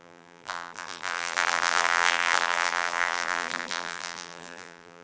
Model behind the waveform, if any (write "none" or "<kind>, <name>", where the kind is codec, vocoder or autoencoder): vocoder, BigVGAN v2